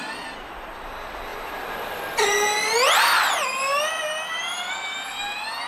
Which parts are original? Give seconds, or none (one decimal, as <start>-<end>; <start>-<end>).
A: 0.0-5.7